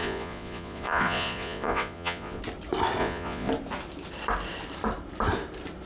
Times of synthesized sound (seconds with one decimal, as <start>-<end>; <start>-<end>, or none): 0.0-2.4; 3.0-3.5

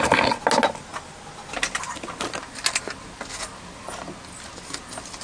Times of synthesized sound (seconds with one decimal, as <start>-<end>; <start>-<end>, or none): none

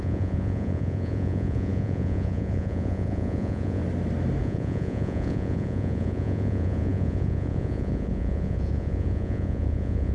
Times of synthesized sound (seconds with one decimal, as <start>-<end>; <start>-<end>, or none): 0.0-3.8; 4.4-10.1

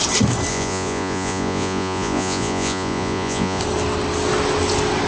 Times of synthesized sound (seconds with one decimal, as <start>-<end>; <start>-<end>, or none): 0.5-3.6

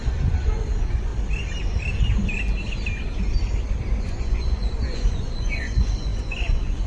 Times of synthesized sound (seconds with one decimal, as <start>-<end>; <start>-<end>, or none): 0.0-1.1; 4.0-6.9